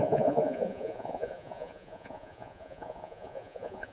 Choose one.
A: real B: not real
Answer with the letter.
B